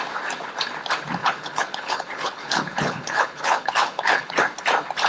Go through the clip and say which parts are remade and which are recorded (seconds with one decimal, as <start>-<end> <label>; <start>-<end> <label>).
0.0-1.2 recorded; 1.2-4.3 remade; 4.3-5.1 recorded